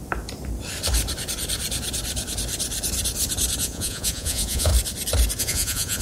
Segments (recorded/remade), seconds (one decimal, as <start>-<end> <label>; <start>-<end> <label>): 0.0-3.6 recorded; 3.6-4.7 remade; 4.7-5.4 recorded; 5.4-6.0 remade